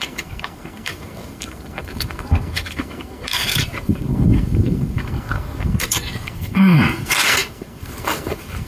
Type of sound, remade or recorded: remade